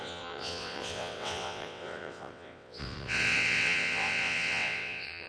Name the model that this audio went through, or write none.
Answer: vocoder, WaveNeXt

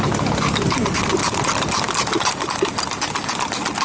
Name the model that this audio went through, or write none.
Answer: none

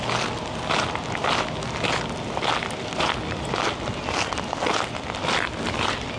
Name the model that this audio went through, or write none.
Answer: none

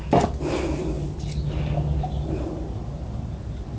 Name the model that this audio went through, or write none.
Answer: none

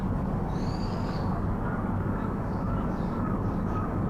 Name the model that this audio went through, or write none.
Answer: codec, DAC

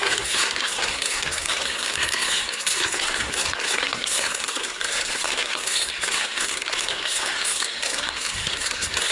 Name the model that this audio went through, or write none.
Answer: codec, SNAC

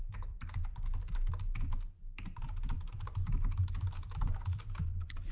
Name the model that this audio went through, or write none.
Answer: vocoder, BigVGAN v2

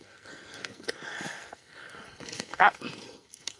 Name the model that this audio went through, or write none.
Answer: codec, SNAC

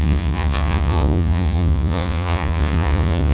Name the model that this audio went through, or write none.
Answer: vocoder, Vocos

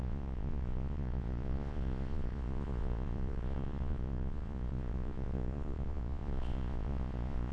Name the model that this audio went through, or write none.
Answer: vocoder, Vocos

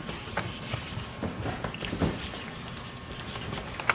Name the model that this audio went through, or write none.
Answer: none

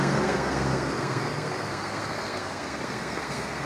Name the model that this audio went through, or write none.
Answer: codec, SNAC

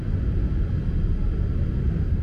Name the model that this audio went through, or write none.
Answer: none